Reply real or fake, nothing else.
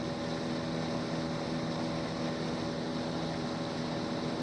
real